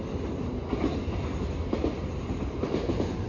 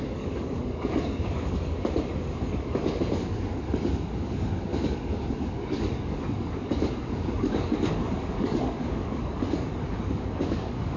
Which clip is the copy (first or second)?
second